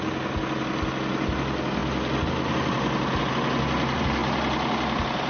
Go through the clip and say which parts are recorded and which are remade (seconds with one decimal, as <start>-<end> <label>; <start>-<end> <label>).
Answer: 0.0-5.3 recorded